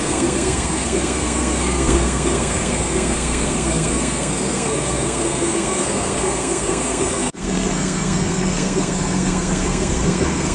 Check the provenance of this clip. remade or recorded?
remade